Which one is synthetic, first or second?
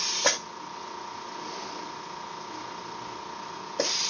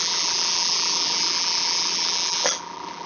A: second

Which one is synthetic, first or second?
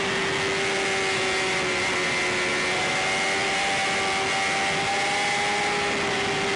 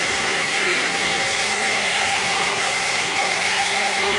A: second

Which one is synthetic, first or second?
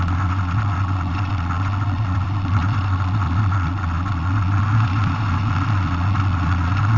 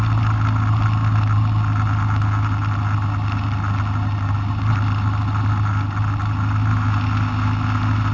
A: first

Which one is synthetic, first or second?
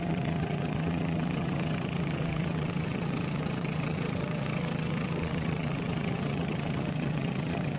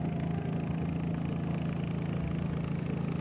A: first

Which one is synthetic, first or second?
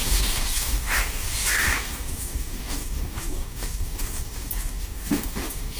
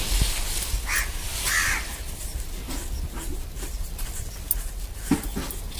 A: first